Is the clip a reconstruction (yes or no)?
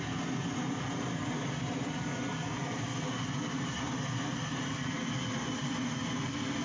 no